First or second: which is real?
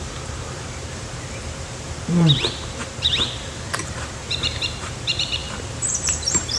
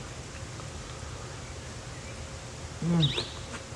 second